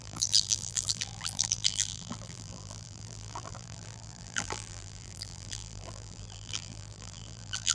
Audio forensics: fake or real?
fake